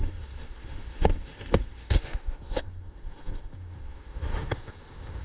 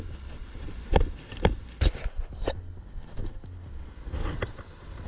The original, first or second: second